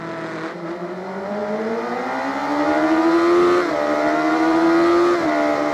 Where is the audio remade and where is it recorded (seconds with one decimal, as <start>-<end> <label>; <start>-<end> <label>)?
0.0-5.7 recorded